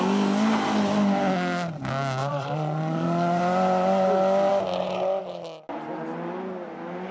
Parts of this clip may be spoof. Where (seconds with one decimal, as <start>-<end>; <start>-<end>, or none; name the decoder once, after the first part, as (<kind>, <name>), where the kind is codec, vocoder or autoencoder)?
2.2-3.4 (vocoder, Vocos)